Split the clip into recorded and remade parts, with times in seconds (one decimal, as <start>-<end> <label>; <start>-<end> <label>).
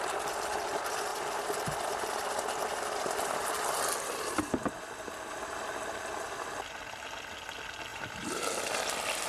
0.0-7.9 recorded; 7.9-8.6 remade; 8.6-9.3 recorded